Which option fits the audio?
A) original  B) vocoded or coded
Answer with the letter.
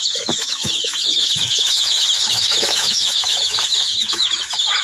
B